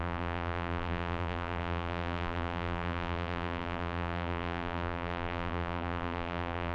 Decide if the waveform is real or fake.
fake